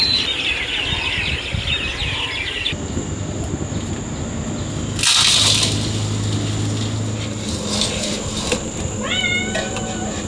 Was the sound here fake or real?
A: real